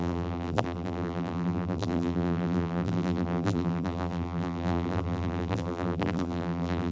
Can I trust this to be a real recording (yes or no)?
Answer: no